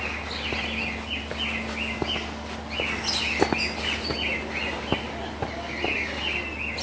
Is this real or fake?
real